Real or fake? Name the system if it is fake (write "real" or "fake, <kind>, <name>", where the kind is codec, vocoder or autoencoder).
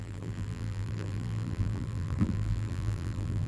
fake, vocoder, BigVGAN v2